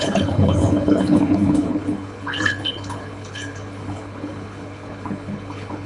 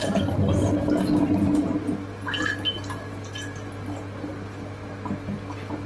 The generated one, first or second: first